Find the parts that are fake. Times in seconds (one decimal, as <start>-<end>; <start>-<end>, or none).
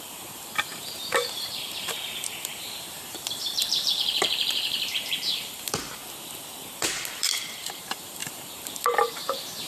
0.0-6.0; 6.8-9.7